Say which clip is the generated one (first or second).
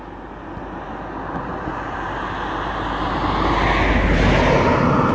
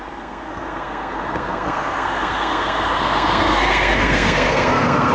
second